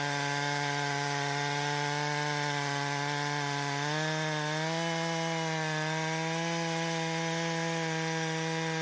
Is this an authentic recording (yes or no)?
yes